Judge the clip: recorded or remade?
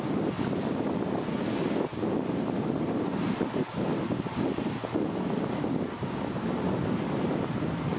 recorded